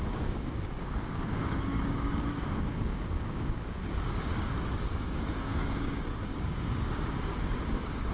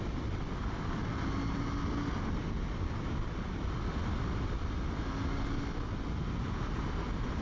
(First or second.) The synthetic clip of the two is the first